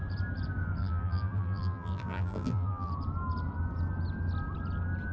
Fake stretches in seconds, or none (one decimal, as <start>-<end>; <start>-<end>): 0.8-2.9